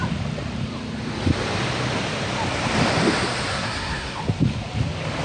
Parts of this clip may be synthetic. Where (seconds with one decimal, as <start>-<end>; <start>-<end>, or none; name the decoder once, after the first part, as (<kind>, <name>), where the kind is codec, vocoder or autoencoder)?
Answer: 3.5-4.2 (codec, SNAC)